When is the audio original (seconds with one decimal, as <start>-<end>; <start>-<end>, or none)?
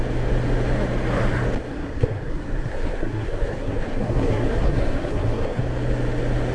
0.0-1.7; 5.6-6.5